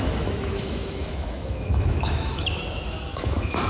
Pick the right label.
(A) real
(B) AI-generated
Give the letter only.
B